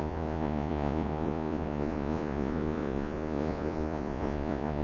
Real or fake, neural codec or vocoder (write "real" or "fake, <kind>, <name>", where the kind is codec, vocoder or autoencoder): fake, vocoder, Vocos